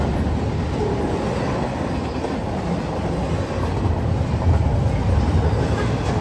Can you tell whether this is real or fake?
real